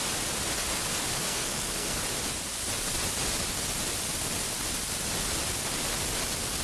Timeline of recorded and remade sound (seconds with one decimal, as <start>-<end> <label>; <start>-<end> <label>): 0.0-1.2 recorded; 1.2-2.0 remade; 2.0-6.6 recorded